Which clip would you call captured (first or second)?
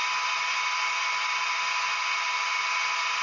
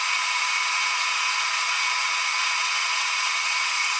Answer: first